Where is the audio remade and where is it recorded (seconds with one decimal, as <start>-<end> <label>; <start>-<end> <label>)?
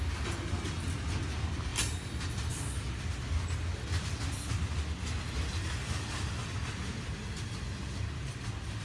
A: 0.0-8.8 recorded